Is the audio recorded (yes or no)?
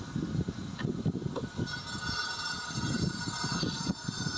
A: yes